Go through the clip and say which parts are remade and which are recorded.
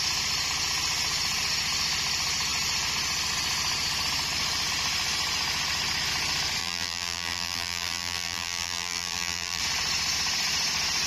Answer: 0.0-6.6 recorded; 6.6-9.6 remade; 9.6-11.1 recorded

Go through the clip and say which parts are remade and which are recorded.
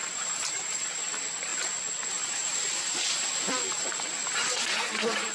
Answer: 0.0-1.1 remade; 1.1-4.2 recorded; 4.2-5.3 remade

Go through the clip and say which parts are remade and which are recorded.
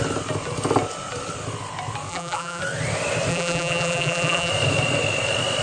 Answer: 0.0-2.1 recorded; 2.1-2.6 remade; 2.6-3.3 recorded; 3.3-4.5 remade; 4.5-5.6 recorded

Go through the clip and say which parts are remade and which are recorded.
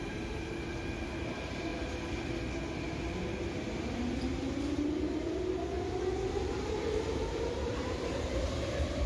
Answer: 0.0-1.7 remade; 1.7-6.3 recorded; 6.3-9.1 remade